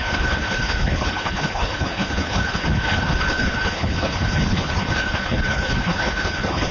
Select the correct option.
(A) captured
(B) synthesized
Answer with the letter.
B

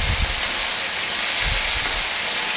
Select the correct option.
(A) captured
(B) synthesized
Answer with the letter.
A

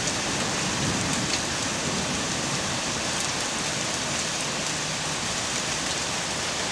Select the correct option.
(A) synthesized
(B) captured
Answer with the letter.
B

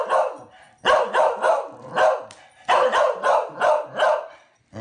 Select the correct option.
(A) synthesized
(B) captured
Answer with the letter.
B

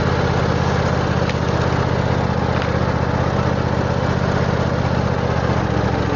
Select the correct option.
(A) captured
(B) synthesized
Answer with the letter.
A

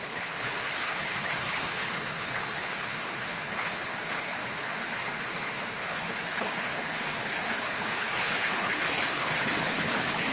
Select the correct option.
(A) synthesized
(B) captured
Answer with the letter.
A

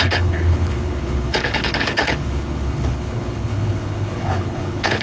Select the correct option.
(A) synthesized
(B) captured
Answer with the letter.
A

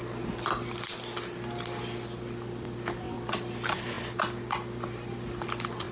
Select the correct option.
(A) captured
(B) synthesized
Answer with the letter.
A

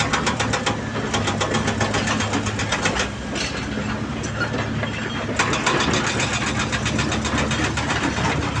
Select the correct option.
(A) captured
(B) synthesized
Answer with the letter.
A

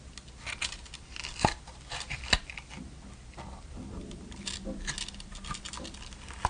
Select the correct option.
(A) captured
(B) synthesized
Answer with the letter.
A